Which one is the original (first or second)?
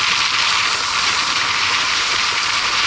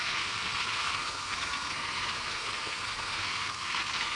first